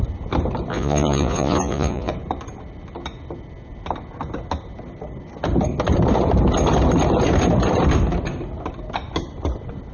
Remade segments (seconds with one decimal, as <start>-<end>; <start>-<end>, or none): 0.7-2.1